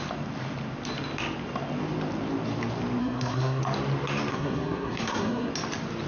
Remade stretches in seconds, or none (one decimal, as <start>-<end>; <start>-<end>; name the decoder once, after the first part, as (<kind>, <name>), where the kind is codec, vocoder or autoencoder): 3.0-3.6 (codec, SNAC); 4.3-5.5